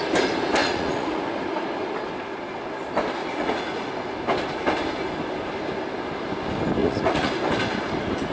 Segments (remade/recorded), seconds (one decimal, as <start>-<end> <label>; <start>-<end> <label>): 0.0-0.6 recorded; 0.6-1.2 remade; 1.2-3.2 recorded; 3.2-3.9 remade; 3.9-6.8 recorded; 6.8-7.3 remade; 7.3-8.3 recorded